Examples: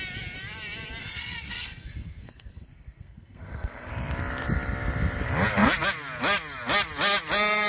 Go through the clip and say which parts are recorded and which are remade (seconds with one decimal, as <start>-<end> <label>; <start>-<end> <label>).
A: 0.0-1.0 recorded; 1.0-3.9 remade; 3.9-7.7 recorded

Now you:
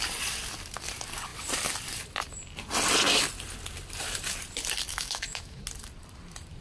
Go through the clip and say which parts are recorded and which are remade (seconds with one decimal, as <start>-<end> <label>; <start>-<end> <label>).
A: 0.0-4.9 recorded; 4.9-5.6 remade; 5.6-6.6 recorded

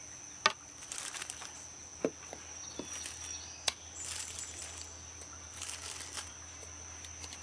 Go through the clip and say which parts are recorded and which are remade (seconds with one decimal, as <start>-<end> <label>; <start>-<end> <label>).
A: 0.0-7.4 recorded